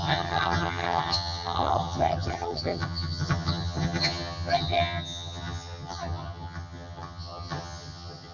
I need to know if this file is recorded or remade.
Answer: remade